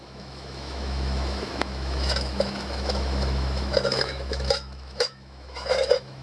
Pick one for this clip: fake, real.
fake